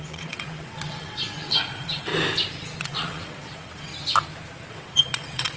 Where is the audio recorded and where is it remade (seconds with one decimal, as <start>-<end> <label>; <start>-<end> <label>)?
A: 0.0-2.1 remade; 2.1-2.8 recorded; 2.8-3.9 remade; 3.9-4.7 recorded; 4.7-5.6 remade